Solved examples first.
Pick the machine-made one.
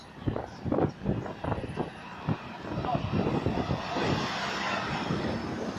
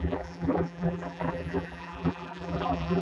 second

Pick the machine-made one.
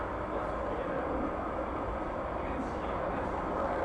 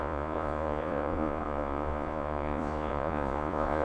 second